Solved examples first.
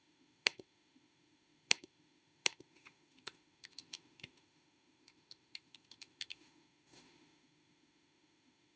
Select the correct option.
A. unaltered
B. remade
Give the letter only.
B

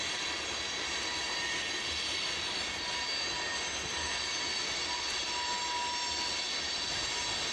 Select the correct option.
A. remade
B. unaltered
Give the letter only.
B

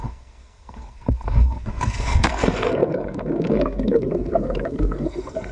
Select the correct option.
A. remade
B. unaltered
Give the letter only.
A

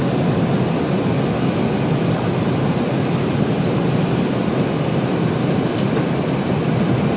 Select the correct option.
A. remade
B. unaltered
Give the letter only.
B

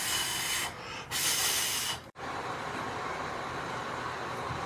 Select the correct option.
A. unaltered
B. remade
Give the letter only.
A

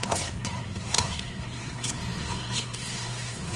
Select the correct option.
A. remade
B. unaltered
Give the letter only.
A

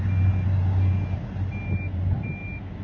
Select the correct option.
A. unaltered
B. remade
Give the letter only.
A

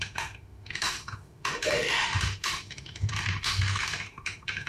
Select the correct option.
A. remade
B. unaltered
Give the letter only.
A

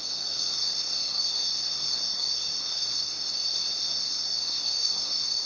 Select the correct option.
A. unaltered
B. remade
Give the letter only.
B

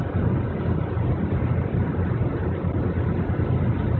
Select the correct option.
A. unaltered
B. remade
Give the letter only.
A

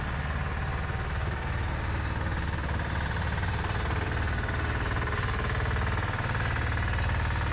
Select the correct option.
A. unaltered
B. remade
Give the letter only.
A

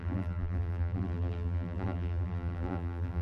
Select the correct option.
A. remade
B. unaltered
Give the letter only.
A